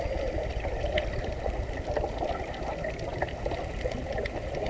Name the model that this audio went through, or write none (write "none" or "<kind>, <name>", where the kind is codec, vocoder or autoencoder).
none